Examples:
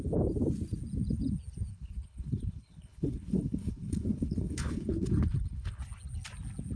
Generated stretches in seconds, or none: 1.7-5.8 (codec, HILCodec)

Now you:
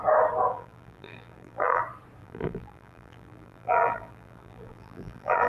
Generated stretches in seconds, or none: 0.5-1.8 (vocoder, BigVGAN v2); 2.2-5.5

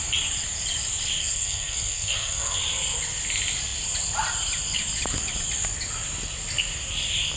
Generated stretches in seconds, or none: 1.2-2.6 (codec, SNAC)

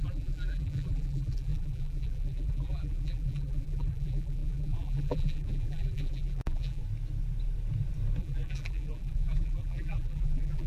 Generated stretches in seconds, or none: 0.0-6.8 (vocoder, BigVGAN v2); 8.2-10.7